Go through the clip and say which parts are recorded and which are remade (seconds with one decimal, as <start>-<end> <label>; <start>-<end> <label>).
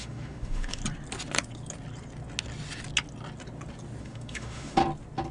0.0-0.8 remade; 0.8-4.0 recorded; 4.0-4.8 remade; 4.8-5.3 recorded